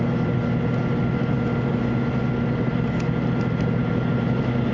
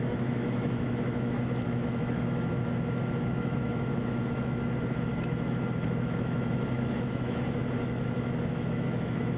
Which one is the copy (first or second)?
second